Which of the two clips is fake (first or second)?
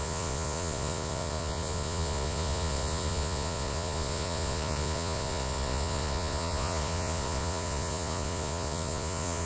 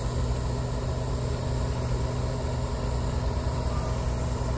first